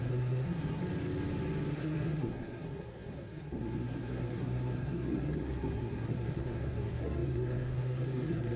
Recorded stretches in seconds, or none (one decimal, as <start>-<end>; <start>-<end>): 0.8-1.7